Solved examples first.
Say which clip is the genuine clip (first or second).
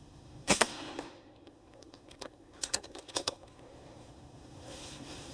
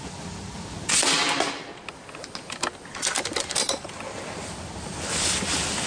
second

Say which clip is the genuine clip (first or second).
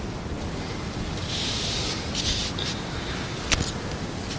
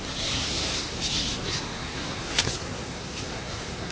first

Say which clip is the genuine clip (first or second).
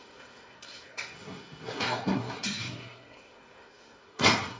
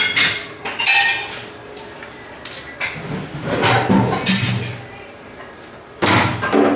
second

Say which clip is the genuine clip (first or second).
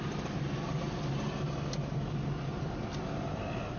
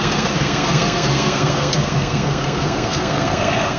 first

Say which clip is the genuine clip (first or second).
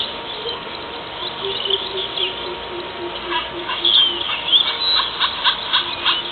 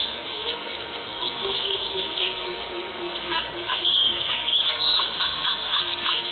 first